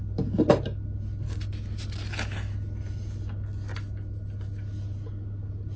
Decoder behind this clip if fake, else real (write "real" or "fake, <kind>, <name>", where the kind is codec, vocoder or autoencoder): real